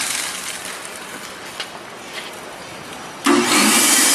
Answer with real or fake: real